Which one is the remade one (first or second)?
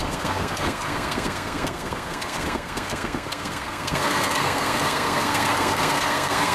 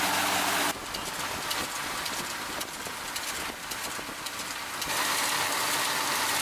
first